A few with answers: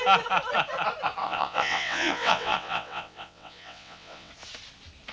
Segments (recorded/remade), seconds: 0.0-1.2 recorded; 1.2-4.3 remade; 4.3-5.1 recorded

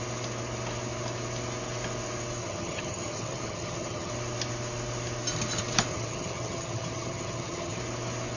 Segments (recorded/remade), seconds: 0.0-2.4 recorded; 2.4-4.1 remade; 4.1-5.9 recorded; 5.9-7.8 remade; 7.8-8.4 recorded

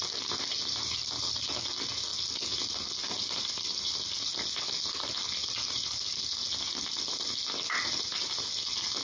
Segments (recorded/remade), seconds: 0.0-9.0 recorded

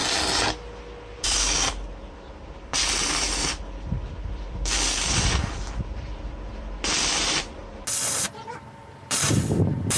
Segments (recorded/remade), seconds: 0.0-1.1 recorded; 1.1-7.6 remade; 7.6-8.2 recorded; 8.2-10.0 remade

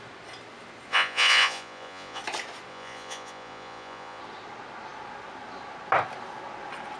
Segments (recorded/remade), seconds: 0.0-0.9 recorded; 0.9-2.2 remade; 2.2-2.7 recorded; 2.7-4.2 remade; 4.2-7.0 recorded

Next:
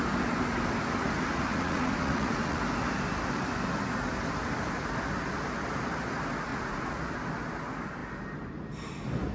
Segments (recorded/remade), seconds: 0.0-1.5 recorded; 1.5-2.6 remade; 2.6-6.5 recorded; 6.5-7.0 remade; 7.0-9.3 recorded

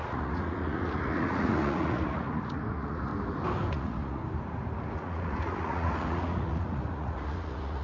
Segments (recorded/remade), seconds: 0.0-3.1 remade; 3.1-3.7 recorded; 3.7-4.2 remade; 4.2-4.9 recorded; 4.9-7.8 remade